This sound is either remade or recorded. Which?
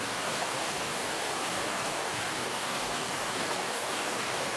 remade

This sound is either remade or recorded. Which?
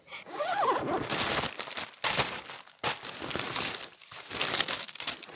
recorded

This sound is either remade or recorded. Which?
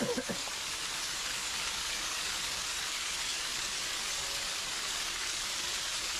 remade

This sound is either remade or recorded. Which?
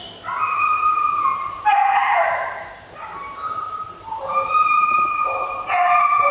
recorded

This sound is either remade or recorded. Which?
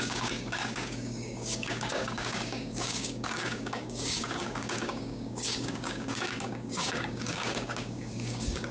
remade